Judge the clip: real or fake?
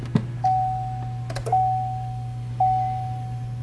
real